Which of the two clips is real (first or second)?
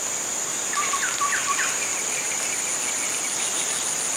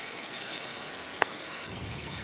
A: first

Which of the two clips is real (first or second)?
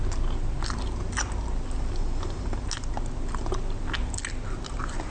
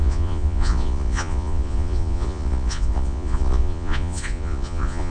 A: first